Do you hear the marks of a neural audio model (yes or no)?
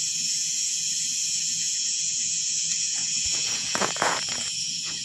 yes